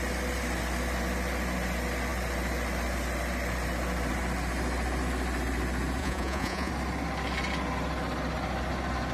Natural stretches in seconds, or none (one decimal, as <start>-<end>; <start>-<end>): 0.0-6.0; 6.7-9.1